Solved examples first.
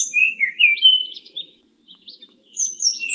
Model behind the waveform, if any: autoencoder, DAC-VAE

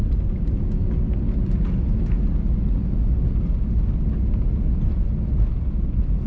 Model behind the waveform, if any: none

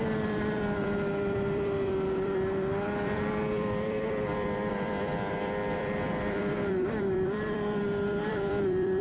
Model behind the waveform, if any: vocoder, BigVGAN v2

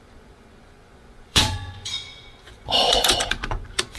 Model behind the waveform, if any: vocoder, Vocos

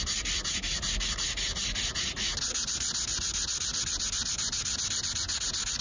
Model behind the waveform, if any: none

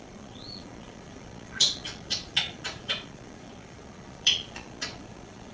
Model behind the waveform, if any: vocoder, Vocos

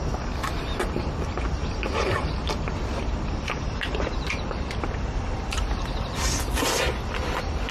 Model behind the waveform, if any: none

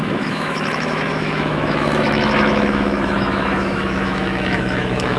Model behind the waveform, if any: autoencoder, DAC-VAE